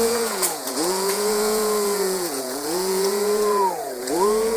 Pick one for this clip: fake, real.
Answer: fake